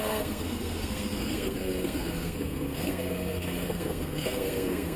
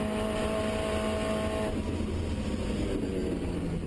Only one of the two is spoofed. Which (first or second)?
first